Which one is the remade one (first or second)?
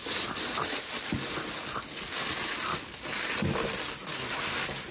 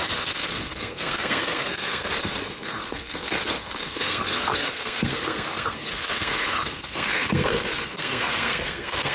second